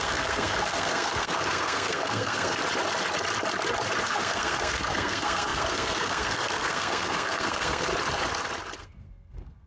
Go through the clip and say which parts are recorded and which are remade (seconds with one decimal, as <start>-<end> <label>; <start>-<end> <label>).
0.0-2.6 remade; 2.6-4.0 recorded; 4.0-7.9 remade; 7.9-8.8 recorded; 8.8-9.7 remade